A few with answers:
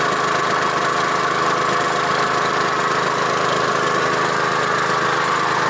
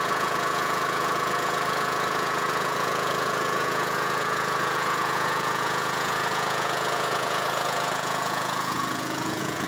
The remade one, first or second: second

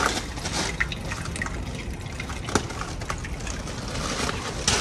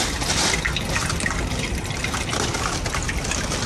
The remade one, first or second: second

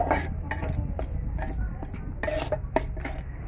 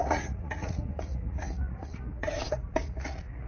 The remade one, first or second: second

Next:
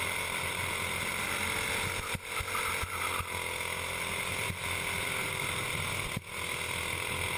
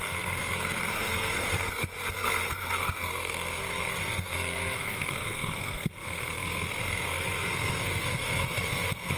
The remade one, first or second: second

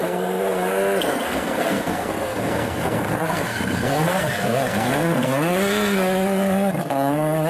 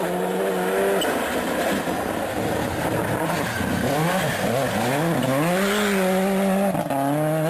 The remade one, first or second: first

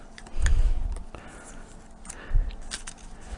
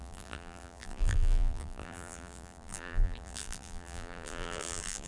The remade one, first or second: second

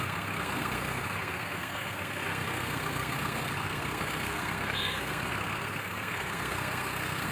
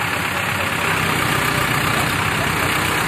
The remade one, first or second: first